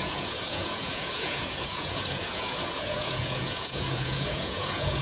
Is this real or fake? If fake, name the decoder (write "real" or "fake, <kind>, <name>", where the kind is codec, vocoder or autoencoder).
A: fake, vocoder, Vocos